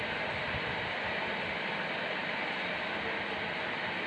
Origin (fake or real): real